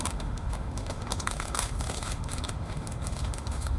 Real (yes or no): no